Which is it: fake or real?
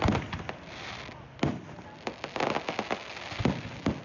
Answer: real